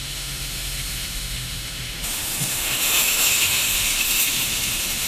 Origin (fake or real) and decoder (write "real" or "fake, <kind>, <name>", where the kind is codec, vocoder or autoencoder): fake, autoencoder, DAC-VAE